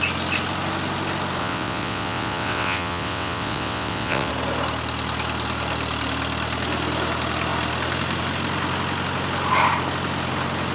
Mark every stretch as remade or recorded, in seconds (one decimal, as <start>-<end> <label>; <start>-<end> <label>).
0.0-1.4 recorded; 1.4-4.3 remade; 4.3-10.7 recorded